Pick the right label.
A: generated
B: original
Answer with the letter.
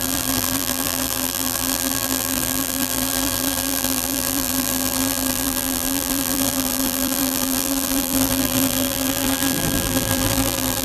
A